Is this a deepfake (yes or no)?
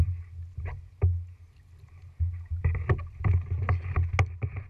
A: no